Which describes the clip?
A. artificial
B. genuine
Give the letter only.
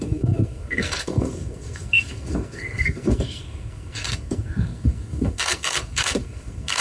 A